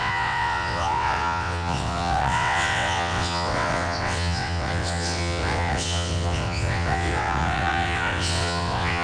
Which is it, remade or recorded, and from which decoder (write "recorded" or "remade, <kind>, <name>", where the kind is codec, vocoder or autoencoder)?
remade, vocoder, WaveNeXt